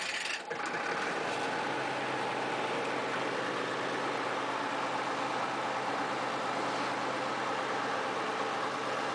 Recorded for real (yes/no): yes